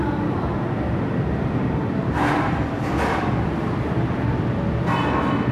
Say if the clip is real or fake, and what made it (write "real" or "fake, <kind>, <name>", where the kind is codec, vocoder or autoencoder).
fake, vocoder, BigVGAN v2